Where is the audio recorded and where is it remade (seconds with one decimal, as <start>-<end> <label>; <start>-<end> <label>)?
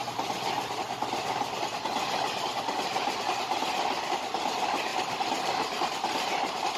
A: 0.0-6.8 recorded